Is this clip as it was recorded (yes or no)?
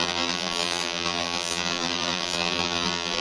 no